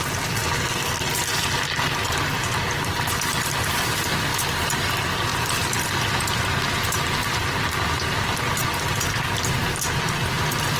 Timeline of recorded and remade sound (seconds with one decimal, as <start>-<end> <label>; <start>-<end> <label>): 0.0-0.4 remade; 0.4-1.8 recorded; 1.8-4.3 remade; 4.3-4.8 recorded; 4.8-5.3 remade; 5.3-9.5 recorded; 9.5-10.8 remade